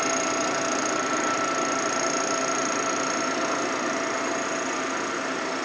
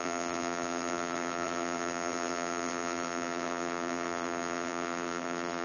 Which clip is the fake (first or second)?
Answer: second